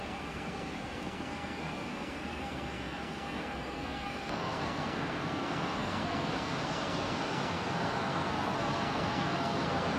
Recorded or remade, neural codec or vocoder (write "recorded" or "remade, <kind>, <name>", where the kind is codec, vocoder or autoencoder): remade, codec, SNAC